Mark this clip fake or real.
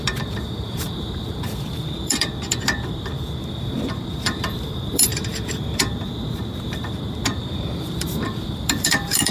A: fake